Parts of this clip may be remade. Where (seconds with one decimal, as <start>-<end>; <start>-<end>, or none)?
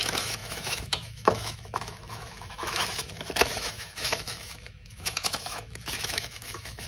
0.0-6.9